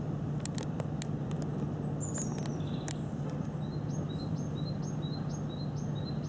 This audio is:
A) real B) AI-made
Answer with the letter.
A